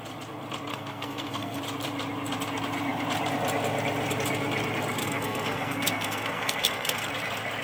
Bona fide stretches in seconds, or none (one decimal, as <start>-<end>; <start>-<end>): 0.0-0.7; 1.6-5.0; 7.1-7.6